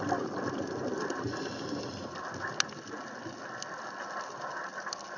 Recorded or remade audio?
recorded